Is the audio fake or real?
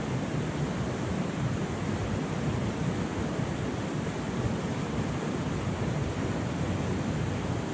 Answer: real